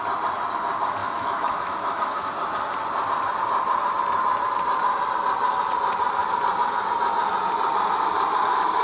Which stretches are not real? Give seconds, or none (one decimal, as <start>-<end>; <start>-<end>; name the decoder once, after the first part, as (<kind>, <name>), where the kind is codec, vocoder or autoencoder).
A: 1.0-2.3 (autoencoder, DAC-VAE)